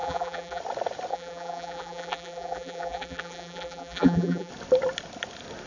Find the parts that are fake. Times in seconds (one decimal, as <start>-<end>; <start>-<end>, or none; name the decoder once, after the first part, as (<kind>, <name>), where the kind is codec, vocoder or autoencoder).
0.0-0.6 (vocoder, BigVGAN v2); 1.1-4.5